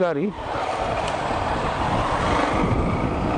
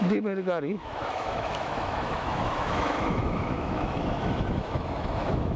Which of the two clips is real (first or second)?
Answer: first